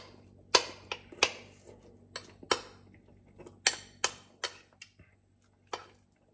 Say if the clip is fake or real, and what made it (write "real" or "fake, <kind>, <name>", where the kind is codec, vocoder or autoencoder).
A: real